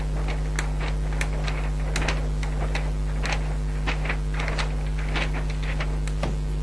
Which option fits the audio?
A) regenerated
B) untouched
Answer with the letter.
B